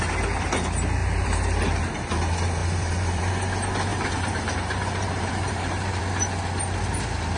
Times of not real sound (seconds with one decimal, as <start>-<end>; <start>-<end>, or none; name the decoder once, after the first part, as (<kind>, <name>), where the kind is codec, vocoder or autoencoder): 1.0-2.1 (vocoder, BigVGAN v2); 2.6-3.3; 3.9-6.0